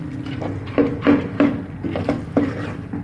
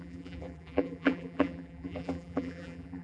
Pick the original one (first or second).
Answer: first